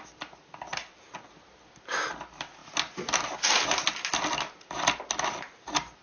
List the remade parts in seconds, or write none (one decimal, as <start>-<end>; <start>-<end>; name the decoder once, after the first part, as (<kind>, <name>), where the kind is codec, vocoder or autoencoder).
none